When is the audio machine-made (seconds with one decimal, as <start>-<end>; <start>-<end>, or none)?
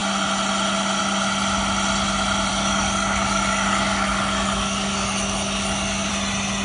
2.5-6.1